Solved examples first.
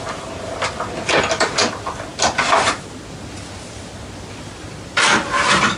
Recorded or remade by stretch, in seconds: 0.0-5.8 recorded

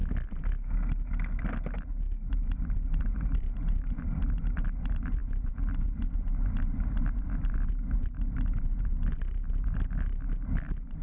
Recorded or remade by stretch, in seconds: 0.0-2.6 recorded; 2.6-11.0 remade